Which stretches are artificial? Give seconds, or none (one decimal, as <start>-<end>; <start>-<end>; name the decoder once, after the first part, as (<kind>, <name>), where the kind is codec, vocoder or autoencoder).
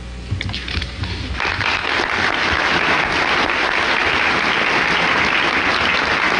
none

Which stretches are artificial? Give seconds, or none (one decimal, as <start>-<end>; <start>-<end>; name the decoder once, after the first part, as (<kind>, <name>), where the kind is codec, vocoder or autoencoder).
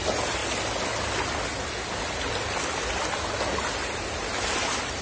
none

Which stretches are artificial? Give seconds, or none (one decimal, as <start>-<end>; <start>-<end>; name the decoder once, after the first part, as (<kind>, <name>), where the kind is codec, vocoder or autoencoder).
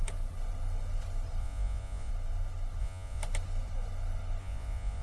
1.4-2.1 (vocoder, Vocos); 2.8-3.2; 4.4-5.0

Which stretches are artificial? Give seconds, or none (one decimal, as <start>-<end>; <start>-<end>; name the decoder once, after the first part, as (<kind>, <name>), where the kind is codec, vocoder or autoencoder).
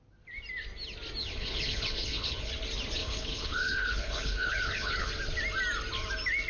1.2-2.5 (codec, HILCodec); 3.0-5.1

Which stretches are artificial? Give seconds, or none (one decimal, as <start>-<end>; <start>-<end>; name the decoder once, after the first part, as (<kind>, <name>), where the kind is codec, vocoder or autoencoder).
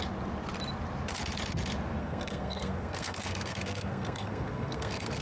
2.0-5.2 (codec, SNAC)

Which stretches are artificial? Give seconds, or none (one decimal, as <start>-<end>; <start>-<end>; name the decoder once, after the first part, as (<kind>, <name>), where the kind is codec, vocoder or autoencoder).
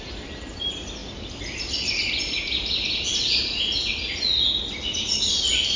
none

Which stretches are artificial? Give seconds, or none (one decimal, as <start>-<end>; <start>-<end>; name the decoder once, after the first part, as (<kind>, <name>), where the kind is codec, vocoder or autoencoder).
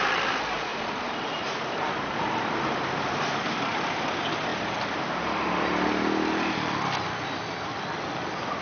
0.7-3.6 (vocoder, BigVGAN v2)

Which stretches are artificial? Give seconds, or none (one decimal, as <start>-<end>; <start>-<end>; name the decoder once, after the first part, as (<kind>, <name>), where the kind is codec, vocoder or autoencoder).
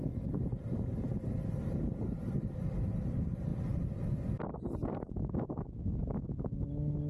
none